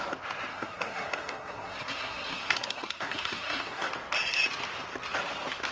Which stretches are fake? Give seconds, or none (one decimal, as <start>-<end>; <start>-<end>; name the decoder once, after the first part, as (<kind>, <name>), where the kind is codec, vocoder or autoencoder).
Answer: 0.5-3.9 (codec, SNAC)